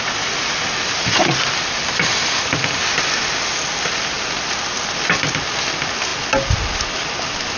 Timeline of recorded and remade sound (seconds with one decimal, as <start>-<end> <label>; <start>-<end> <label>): 0.0-7.6 recorded